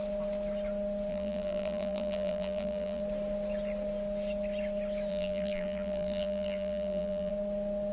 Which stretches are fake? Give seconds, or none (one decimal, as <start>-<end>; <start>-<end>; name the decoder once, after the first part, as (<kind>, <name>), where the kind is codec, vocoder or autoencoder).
1.1-3.0 (vocoder, BigVGAN v2); 5.1-7.3